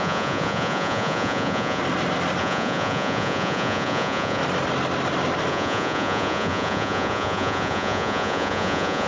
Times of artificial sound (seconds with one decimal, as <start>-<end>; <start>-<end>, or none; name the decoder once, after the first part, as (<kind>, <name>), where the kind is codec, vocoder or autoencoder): 0.0-1.8 (vocoder, Vocos); 2.4-4.4; 5.5-9.1